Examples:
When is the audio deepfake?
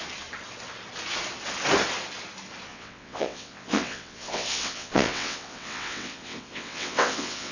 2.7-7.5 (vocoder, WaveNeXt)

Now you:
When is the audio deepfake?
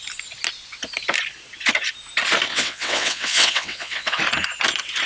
2.5-4.2 (vocoder, WaveNeXt)